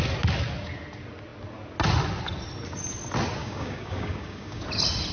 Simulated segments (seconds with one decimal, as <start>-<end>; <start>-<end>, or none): 3.4-4.6